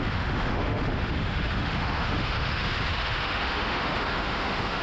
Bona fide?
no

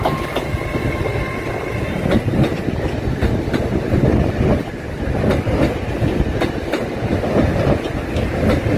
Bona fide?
yes